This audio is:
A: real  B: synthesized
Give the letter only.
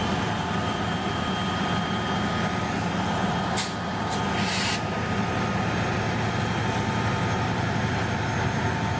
A